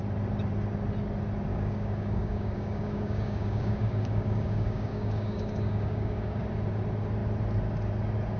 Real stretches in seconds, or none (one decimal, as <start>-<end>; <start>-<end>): 0.0-1.5; 6.4-8.4